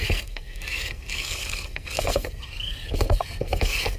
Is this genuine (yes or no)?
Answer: no